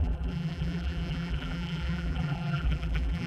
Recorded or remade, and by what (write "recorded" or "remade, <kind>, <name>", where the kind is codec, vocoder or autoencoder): remade, vocoder, BigVGAN v2